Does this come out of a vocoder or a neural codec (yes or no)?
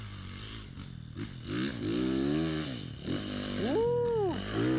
no